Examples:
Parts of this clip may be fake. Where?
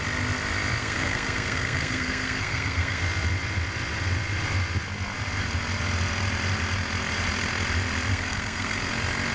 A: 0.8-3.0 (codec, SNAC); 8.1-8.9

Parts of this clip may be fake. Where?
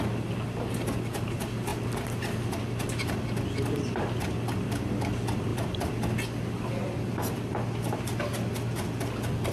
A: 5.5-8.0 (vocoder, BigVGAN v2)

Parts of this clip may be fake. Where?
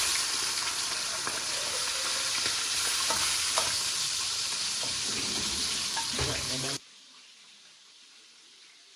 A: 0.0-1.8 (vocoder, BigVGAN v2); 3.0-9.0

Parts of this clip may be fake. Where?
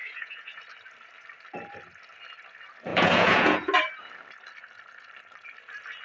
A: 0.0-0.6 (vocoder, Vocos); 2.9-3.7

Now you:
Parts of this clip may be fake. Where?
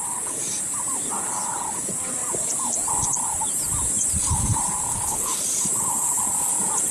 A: 4.9-5.4 (codec, HILCodec)